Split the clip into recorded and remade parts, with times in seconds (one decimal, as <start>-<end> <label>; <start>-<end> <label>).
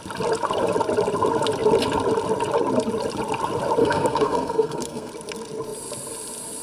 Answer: 0.0-3.8 recorded; 3.8-5.1 remade; 5.1-6.6 recorded